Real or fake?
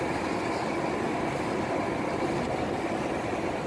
real